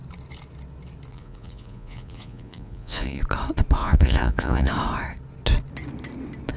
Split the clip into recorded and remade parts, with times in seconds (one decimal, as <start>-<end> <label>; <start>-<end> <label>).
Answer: 0.0-1.1 recorded; 1.1-3.2 remade; 3.2-3.8 recorded; 3.8-4.7 remade; 4.7-6.6 recorded